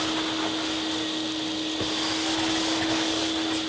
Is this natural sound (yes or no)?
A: yes